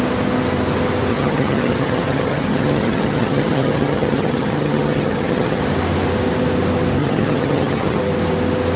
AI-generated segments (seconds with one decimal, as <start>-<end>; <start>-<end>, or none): 1.1-5.6; 7.0-8.0